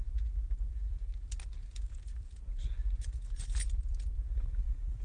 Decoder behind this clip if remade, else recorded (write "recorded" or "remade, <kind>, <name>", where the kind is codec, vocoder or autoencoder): recorded